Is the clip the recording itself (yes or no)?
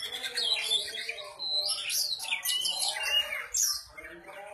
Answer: yes